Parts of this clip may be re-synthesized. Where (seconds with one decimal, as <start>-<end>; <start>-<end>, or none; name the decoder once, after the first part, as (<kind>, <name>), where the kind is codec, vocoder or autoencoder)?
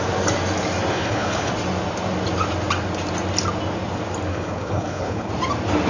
0.9-1.5 (codec, HILCodec); 4.3-5.3